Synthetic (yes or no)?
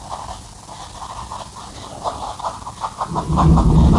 no